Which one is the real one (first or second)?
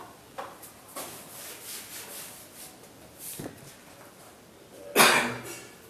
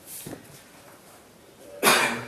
first